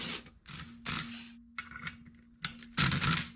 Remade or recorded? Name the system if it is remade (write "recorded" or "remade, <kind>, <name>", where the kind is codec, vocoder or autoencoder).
recorded